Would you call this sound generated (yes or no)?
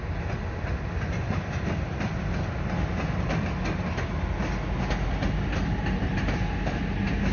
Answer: no